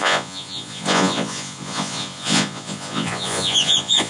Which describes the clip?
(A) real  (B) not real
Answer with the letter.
B